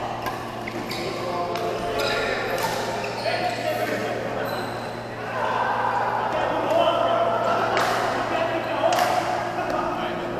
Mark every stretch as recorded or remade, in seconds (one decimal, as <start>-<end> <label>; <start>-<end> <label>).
0.0-10.4 recorded